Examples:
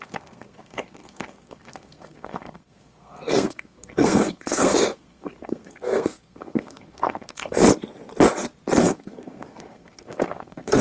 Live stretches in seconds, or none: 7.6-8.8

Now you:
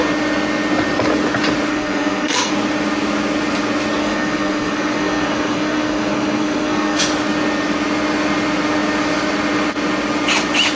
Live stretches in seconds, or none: 0.0-1.7; 2.5-4.0; 7.0-10.8

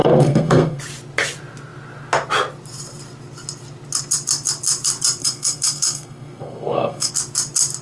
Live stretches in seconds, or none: 0.8-5.2; 7.1-7.8

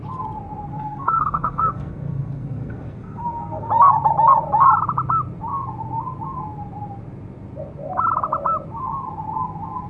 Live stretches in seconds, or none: 0.0-0.7; 3.7-9.9

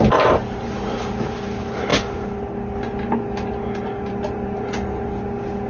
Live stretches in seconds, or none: 0.0-5.7